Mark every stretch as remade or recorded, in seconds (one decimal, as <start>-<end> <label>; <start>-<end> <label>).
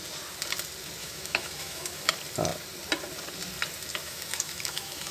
0.0-1.0 recorded; 1.0-2.1 remade; 2.1-4.0 recorded; 4.0-5.1 remade